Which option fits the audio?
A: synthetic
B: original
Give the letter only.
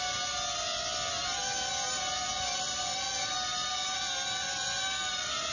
B